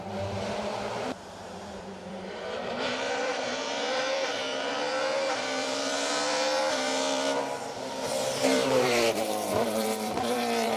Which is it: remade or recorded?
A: remade